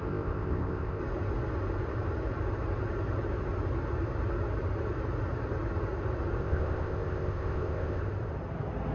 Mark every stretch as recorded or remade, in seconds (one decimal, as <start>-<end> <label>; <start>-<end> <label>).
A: 0.0-1.0 remade; 1.0-6.4 recorded; 6.4-8.0 remade; 8.0-8.9 recorded